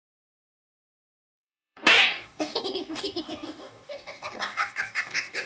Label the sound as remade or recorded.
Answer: remade